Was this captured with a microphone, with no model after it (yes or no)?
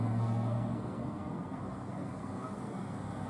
no